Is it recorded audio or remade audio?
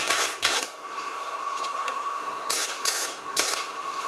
remade